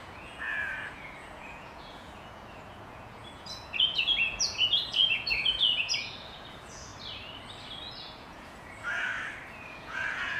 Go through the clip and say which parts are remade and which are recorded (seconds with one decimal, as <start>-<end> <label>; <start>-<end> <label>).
0.0-6.9 remade; 6.9-7.9 recorded; 7.9-9.1 remade; 9.1-9.7 recorded; 9.7-10.4 remade